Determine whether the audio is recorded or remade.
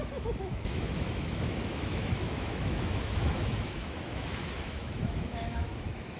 remade